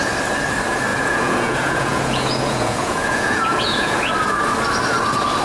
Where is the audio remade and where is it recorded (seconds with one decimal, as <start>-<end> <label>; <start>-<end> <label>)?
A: 0.0-0.9 recorded; 0.9-4.1 remade; 4.1-5.4 recorded